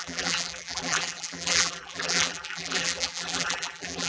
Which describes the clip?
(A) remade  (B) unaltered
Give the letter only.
A